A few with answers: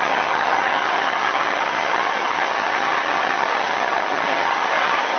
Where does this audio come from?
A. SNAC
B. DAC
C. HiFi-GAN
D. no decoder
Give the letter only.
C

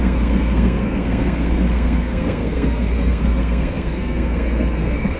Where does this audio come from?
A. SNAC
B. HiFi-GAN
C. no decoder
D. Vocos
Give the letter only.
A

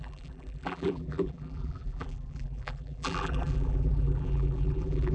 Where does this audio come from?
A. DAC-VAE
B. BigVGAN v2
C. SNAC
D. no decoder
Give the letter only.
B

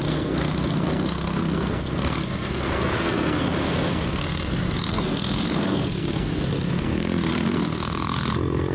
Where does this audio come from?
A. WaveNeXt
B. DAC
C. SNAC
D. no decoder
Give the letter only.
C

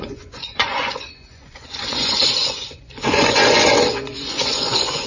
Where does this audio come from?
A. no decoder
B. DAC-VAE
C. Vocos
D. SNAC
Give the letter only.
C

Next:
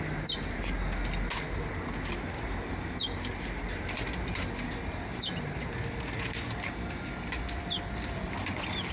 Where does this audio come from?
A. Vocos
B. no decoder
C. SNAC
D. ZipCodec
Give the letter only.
B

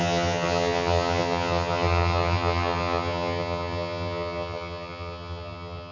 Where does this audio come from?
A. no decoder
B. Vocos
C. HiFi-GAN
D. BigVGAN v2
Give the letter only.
C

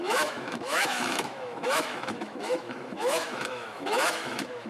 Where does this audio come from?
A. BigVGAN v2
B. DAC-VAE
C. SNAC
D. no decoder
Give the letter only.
B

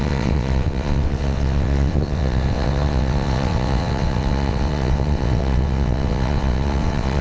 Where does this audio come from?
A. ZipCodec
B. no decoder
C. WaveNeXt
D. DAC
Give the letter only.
C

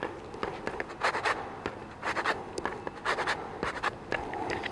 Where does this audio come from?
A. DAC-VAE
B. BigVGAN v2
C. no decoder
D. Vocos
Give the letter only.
C